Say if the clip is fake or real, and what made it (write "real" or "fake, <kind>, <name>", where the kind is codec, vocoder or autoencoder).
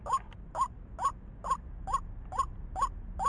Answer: real